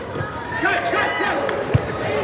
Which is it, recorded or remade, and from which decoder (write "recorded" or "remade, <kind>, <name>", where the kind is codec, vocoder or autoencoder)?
remade, vocoder, BigVGAN v2